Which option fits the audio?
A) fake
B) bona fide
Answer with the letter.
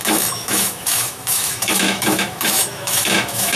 A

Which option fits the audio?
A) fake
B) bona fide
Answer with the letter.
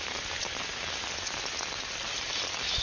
B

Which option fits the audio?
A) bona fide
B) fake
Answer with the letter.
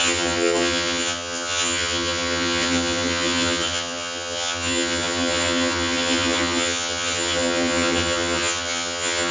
B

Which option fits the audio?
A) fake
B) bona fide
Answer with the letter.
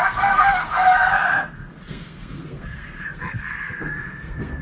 A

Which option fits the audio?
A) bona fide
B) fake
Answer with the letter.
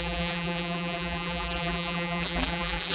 B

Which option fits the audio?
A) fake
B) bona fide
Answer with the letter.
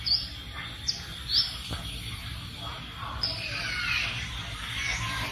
B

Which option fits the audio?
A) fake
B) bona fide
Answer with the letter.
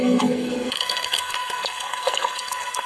A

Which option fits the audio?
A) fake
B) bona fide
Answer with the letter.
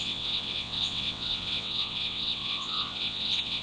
A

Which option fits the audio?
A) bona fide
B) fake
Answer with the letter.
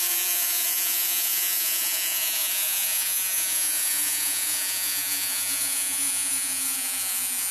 B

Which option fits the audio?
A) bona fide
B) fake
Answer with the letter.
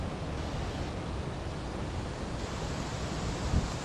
A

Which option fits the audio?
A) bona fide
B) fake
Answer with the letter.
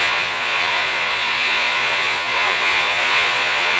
B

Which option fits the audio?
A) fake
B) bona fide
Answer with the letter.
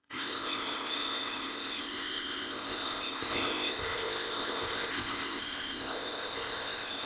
A